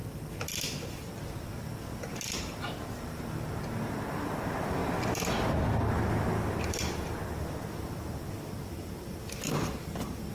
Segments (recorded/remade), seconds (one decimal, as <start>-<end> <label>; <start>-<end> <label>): 0.0-4.1 recorded; 4.1-4.8 remade; 4.8-6.7 recorded; 6.7-10.3 remade